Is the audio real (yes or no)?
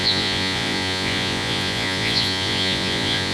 no